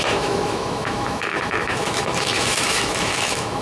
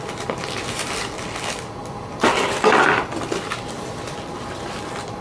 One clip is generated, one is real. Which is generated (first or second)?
first